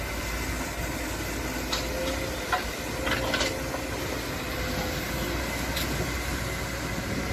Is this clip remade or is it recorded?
recorded